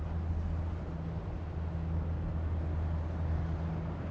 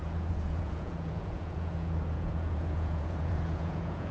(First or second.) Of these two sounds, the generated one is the second